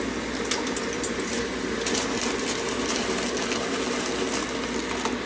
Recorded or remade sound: recorded